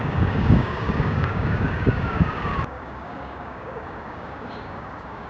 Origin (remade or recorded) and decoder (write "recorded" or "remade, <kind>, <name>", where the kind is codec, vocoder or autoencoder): remade, codec, DAC